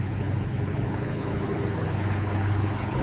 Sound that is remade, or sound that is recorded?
remade